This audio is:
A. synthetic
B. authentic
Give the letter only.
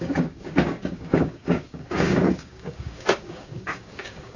A